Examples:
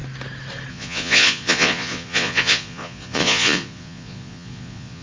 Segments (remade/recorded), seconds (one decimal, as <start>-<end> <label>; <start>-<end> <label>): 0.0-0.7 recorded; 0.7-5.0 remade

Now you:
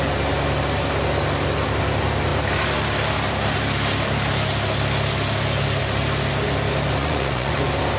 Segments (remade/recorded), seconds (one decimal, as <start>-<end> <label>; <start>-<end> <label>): 0.0-7.0 recorded; 7.0-7.6 remade; 7.6-8.0 recorded

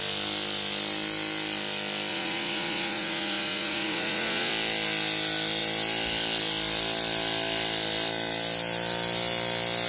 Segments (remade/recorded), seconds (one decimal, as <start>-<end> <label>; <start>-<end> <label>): 0.0-2.1 recorded; 2.1-4.5 remade; 4.5-9.9 recorded

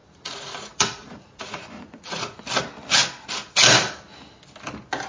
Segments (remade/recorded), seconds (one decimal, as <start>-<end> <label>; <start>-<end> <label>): 0.0-2.4 remade; 2.4-5.1 recorded